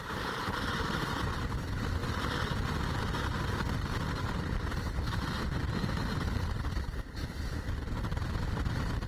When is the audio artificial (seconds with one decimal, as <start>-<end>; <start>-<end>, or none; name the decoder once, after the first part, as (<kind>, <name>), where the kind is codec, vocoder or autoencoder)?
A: 0.0-2.0 (vocoder, BigVGAN v2); 6.7-9.1